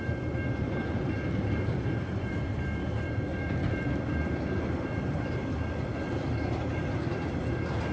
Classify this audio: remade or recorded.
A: remade